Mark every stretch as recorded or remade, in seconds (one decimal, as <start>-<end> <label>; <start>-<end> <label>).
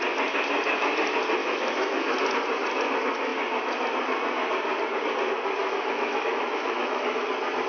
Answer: 0.0-1.4 recorded; 1.4-2.2 remade; 2.2-5.6 recorded; 5.6-7.3 remade; 7.3-7.7 recorded